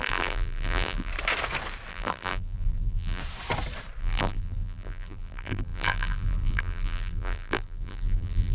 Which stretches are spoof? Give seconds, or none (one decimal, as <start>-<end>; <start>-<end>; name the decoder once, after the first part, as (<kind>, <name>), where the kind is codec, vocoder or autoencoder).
0.0-1.1 (vocoder, BigVGAN v2); 1.9-3.2; 4.0-8.5